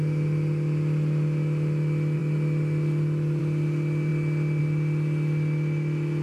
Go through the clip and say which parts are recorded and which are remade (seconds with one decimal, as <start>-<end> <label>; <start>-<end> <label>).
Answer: 0.0-6.2 recorded